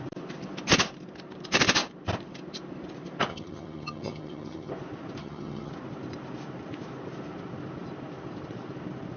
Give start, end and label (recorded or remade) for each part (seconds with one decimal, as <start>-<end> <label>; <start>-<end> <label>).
0.0-3.3 recorded; 3.3-4.7 remade; 4.7-5.2 recorded; 5.2-5.7 remade; 5.7-9.2 recorded